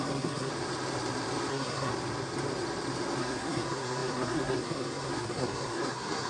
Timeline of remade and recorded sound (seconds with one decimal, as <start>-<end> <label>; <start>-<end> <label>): 0.0-0.5 remade; 0.5-1.5 recorded; 1.5-1.9 remade; 1.9-3.2 recorded; 3.2-6.3 remade